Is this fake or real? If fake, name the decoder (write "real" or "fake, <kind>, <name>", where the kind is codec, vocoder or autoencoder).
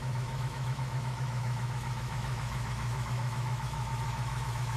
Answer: fake, autoencoder, DAC-VAE